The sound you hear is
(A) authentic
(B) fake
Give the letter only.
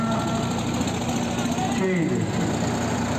A